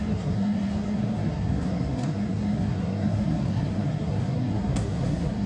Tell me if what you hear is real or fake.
fake